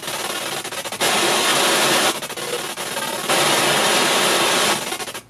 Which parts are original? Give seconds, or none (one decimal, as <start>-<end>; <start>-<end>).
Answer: 0.0-5.3